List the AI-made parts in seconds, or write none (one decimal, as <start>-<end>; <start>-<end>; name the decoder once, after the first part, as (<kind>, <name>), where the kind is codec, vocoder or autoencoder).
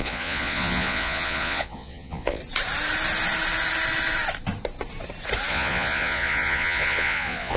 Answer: 0.0-2.4 (vocoder, Vocos); 5.5-7.6